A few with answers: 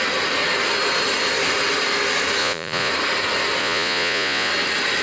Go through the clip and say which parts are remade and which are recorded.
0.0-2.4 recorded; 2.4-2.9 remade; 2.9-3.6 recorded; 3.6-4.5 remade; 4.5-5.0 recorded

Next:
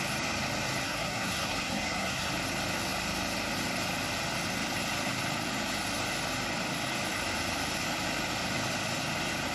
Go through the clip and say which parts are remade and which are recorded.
0.0-0.8 recorded; 0.8-2.3 remade; 2.3-9.5 recorded

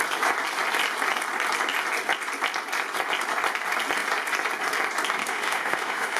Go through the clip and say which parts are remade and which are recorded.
0.0-5.2 recorded; 5.2-6.2 remade

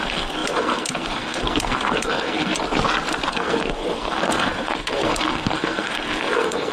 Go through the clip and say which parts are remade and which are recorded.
0.0-2.5 remade; 2.5-3.3 recorded; 3.3-6.7 remade

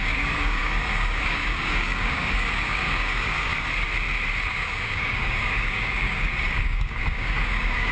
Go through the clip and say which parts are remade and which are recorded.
0.0-3.5 remade; 3.5-4.5 recorded; 4.5-7.9 remade

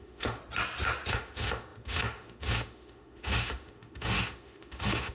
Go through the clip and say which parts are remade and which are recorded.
0.0-0.4 remade; 0.4-1.1 recorded; 1.1-5.1 remade

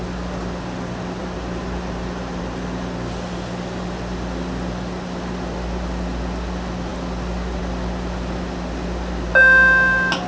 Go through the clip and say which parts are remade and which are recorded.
0.0-1.2 recorded; 1.2-2.4 remade; 2.4-10.3 recorded

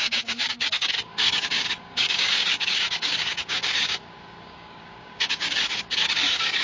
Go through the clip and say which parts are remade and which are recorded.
0.0-6.6 remade